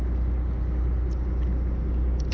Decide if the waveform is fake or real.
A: real